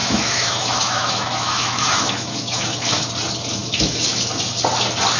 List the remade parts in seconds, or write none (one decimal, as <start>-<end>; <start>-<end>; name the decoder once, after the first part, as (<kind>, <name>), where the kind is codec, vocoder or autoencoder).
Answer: 0.0-3.1 (autoencoder, DAC-VAE); 3.6-4.2